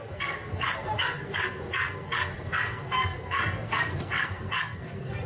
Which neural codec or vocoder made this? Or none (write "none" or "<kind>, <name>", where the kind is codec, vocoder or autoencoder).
codec, SNAC